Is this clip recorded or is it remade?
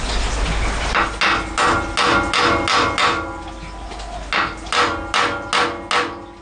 recorded